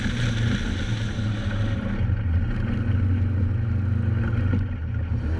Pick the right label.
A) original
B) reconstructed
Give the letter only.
A